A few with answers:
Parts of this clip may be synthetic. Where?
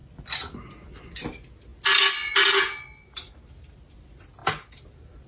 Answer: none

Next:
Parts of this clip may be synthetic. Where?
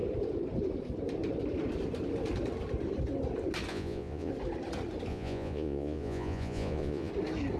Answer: 3.7-4.3 (vocoder, Vocos); 5.1-7.1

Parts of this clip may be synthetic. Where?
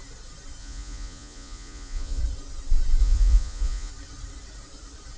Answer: 0.6-2.2 (vocoder, Vocos); 3.0-3.9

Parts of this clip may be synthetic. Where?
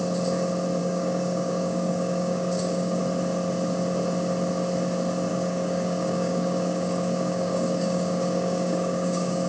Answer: 0.8-3.0 (codec, DAC); 5.3-9.5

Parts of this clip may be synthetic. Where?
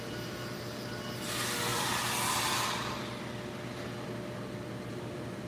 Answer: none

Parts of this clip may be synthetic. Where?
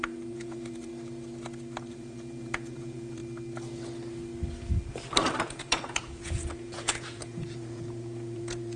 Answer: 0.0-0.9 (vocoder, Vocos); 1.9-3.2; 5.4-8.8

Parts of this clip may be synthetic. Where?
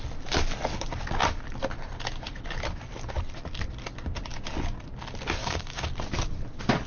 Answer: 5.4-5.9 (codec, DAC)